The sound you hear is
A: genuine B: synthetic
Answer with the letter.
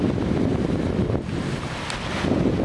A